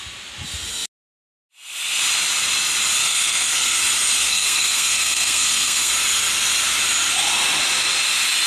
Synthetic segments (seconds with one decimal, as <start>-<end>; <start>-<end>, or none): 3.0-3.8; 4.2-5.9